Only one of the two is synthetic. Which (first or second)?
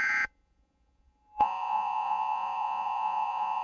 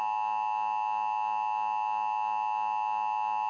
first